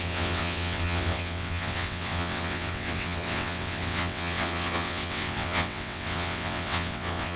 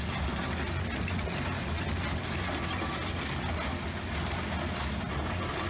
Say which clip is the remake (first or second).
first